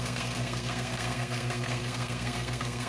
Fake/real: fake